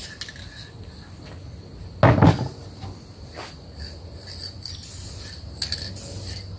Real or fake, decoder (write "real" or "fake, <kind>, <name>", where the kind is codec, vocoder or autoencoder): real